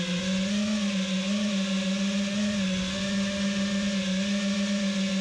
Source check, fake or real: real